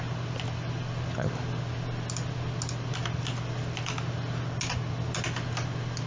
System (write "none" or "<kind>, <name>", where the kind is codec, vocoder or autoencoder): none